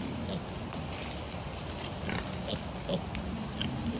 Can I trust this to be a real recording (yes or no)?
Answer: yes